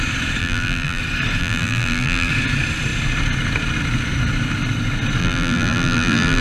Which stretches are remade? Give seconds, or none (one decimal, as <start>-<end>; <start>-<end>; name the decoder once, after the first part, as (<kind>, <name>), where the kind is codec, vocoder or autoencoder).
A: 0.4-1.0 (vocoder, BigVGAN v2); 1.4-2.3; 5.2-6.4